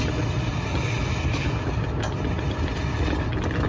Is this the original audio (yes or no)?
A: yes